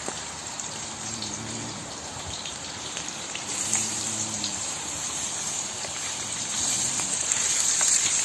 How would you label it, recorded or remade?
remade